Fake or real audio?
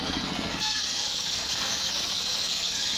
fake